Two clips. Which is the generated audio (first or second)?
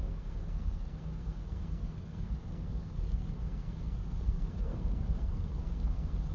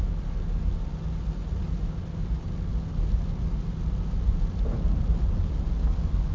first